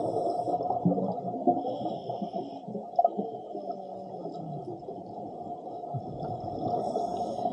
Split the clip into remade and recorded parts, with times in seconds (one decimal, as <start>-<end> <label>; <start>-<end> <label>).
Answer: 0.0-7.5 recorded